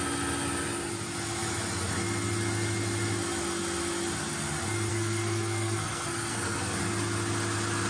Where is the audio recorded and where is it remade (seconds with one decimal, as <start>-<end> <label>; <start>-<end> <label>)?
0.0-4.9 recorded; 4.9-6.6 remade; 6.6-7.9 recorded